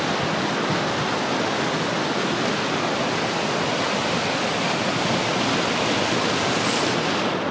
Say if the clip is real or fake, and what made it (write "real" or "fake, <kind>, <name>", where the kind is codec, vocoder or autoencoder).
real